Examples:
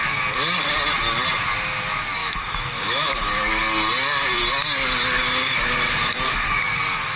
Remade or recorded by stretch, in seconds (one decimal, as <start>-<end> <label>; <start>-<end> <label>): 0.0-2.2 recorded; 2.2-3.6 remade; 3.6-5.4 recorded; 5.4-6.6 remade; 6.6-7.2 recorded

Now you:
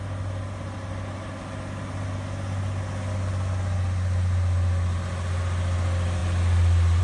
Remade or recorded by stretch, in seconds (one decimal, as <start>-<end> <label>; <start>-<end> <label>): 0.0-7.0 recorded

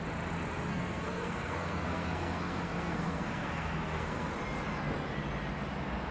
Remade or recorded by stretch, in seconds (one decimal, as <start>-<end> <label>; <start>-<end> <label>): 0.0-0.7 recorded; 0.7-4.3 remade; 4.3-6.1 recorded